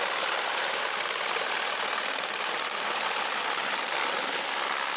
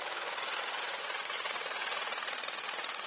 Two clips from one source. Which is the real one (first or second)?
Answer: first